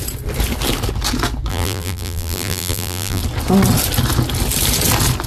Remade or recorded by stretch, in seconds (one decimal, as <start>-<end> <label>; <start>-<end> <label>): 0.0-1.5 recorded; 1.5-3.2 remade; 3.2-5.3 recorded